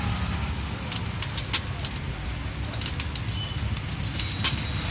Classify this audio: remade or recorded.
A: recorded